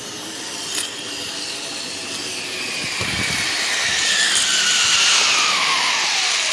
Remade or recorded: recorded